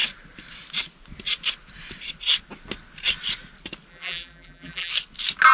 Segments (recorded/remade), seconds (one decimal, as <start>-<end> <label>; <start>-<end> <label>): 0.0-3.9 recorded; 3.9-4.9 remade; 4.9-5.5 recorded